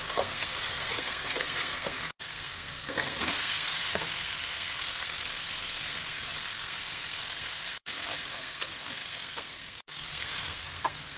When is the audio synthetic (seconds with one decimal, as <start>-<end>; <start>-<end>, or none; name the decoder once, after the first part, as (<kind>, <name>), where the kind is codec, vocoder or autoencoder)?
0.0-11.2 (codec, SNAC)